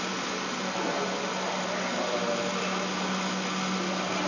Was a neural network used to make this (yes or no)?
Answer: no